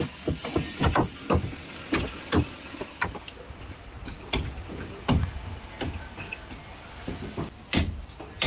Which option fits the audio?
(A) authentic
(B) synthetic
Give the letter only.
A